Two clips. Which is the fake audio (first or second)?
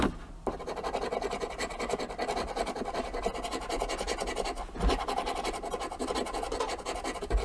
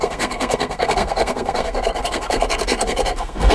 second